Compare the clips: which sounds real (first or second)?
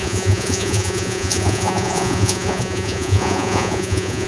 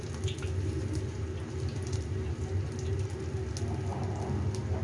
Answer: second